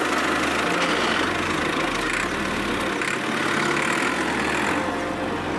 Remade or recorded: recorded